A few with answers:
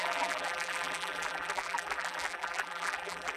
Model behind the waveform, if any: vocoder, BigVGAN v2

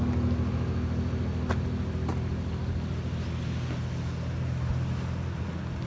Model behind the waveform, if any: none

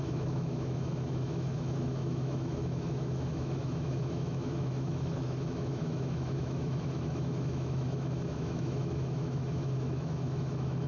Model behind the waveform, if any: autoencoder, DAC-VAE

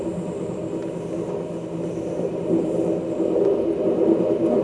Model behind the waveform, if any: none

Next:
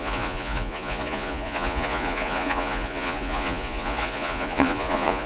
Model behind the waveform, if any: vocoder, Vocos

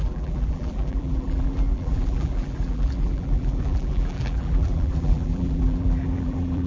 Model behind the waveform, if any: vocoder, BigVGAN v2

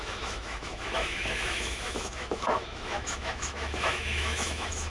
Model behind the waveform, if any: autoencoder, DAC-VAE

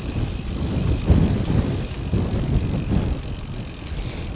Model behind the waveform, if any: vocoder, BigVGAN v2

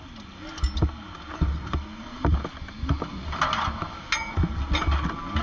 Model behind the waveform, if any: none